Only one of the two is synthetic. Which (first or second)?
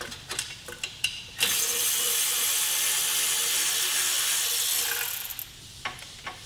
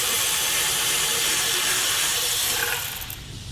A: second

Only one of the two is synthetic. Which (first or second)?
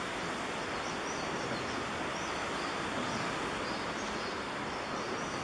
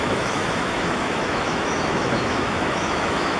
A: second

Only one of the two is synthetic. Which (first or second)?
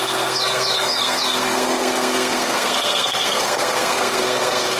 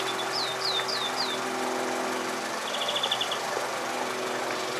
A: first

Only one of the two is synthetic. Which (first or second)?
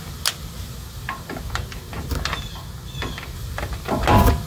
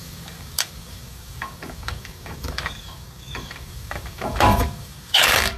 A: second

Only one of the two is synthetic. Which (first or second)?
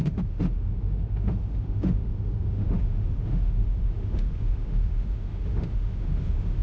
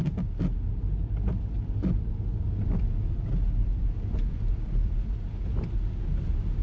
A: first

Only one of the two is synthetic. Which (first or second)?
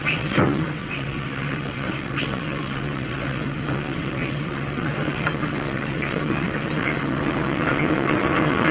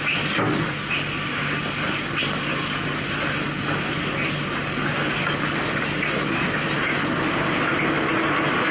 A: first